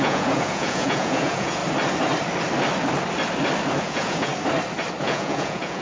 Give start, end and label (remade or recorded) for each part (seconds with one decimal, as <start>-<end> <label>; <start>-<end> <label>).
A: 0.0-1.6 remade; 1.6-3.8 recorded; 3.8-4.3 remade; 4.3-5.0 recorded; 5.0-5.8 remade